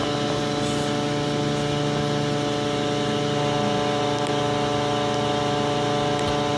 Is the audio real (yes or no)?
yes